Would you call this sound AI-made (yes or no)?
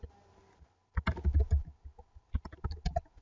no